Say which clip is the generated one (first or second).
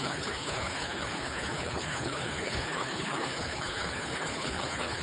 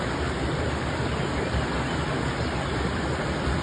first